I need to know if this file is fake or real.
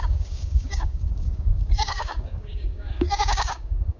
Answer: fake